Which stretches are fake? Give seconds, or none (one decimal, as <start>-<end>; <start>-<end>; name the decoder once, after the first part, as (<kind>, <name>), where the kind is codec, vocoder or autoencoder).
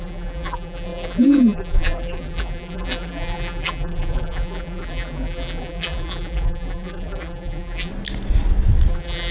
0.0-7.9 (vocoder, BigVGAN v2); 8.9-9.3